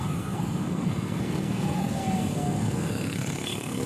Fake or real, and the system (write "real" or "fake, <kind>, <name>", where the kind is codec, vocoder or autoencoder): fake, codec, SNAC